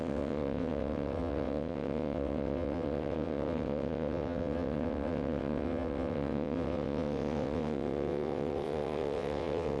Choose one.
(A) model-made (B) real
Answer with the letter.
A